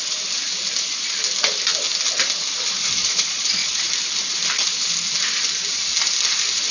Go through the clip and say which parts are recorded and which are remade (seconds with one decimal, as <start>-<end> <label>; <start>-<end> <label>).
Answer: 0.0-3.0 recorded; 3.0-3.9 remade; 3.9-6.7 recorded